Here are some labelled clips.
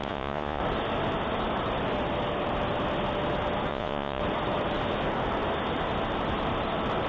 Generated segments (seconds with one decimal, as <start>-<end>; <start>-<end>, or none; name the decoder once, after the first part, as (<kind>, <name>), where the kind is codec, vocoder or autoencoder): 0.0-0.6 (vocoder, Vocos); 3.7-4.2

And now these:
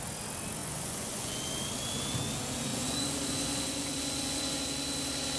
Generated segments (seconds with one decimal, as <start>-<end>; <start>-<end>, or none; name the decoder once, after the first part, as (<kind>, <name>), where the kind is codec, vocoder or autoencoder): 0.6-1.4 (vocoder, Vocos); 2.7-4.6

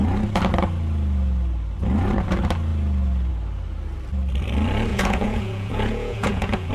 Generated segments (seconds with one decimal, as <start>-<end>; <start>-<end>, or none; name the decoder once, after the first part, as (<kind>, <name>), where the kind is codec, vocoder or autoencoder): 4.9-6.7 (vocoder, Vocos)

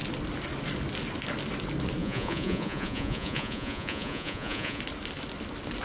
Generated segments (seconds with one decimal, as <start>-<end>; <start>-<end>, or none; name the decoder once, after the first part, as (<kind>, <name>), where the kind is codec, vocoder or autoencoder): 2.0-4.8 (vocoder, Vocos)

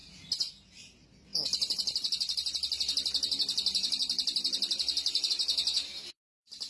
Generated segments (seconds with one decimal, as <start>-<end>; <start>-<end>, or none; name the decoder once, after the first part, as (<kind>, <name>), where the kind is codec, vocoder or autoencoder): none

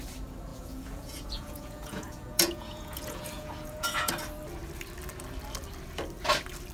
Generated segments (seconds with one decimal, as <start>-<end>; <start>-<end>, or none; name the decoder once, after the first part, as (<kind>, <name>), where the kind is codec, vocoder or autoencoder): 0.5-4.1 (vocoder, Vocos)